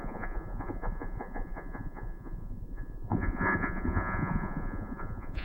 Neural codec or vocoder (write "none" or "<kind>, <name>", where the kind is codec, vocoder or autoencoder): vocoder, Vocos